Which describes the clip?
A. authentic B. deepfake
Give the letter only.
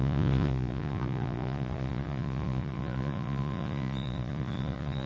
B